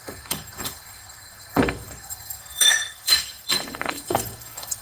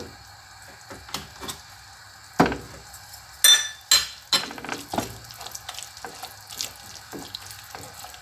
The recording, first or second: second